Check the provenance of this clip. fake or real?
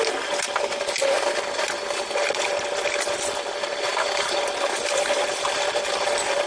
real